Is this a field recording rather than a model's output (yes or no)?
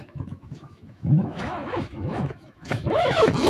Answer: no